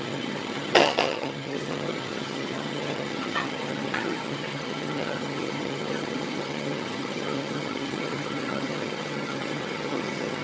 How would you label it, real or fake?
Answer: fake